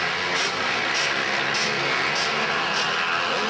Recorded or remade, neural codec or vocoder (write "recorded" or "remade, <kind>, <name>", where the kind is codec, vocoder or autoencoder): recorded